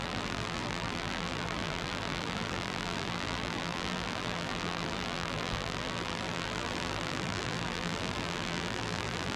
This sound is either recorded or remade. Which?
remade